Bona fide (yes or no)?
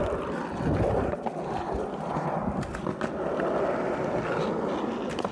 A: yes